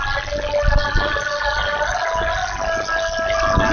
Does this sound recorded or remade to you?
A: recorded